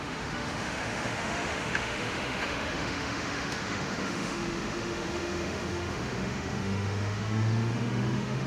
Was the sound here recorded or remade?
remade